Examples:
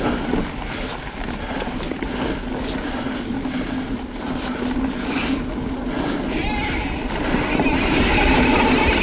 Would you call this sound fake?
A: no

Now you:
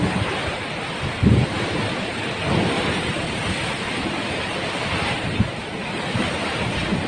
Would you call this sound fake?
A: yes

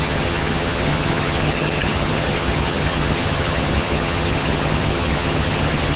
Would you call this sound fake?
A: yes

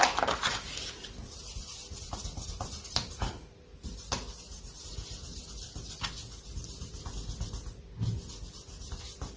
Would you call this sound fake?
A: no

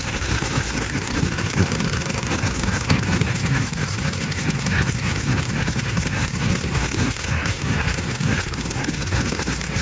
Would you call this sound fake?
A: yes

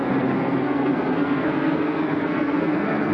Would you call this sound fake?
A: yes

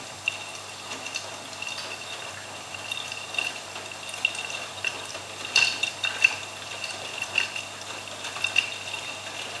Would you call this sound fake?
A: no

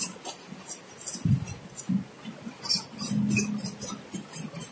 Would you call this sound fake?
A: no